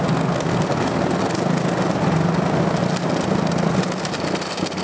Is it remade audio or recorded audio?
recorded